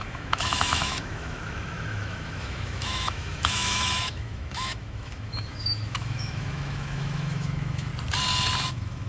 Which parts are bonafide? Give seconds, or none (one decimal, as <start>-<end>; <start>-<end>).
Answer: 7.9-8.7